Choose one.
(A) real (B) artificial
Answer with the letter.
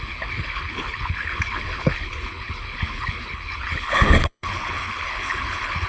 B